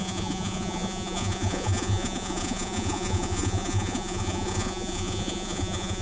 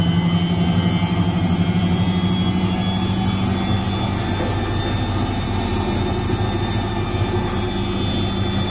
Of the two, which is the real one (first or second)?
second